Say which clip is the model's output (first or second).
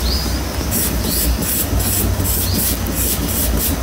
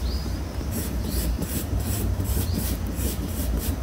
second